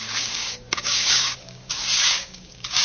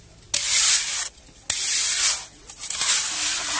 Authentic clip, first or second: second